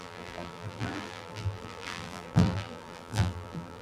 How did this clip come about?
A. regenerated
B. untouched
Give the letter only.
A